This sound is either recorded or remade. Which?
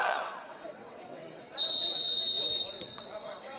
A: remade